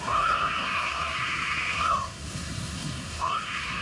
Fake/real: fake